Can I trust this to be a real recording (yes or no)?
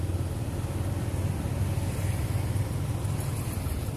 yes